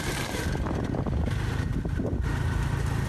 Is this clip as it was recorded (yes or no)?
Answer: yes